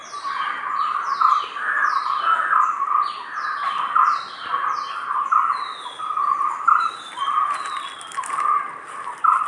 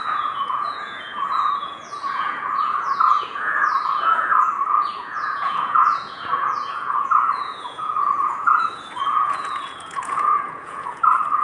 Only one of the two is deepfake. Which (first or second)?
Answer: second